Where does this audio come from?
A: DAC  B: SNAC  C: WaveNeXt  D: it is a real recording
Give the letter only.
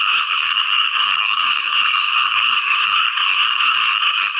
B